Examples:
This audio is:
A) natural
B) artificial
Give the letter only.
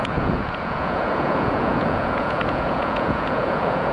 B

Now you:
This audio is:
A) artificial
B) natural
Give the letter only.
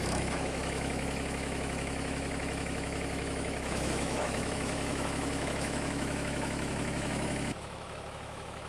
A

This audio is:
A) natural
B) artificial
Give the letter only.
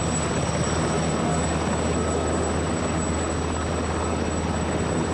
A